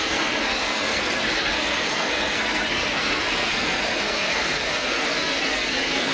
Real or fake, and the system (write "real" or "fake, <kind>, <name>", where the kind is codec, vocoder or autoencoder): fake, codec, SNAC